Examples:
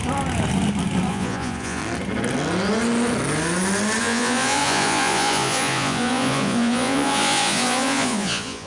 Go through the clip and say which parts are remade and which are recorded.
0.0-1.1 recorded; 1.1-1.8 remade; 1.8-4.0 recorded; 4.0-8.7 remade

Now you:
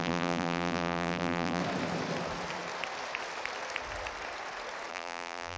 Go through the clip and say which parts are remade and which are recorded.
0.0-1.6 remade; 1.6-4.9 recorded; 4.9-5.6 remade

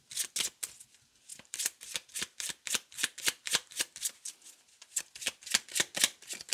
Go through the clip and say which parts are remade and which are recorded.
0.0-1.3 recorded; 1.3-5.0 remade; 5.0-6.5 recorded

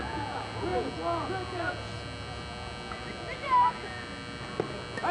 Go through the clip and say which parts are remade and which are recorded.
0.0-5.1 recorded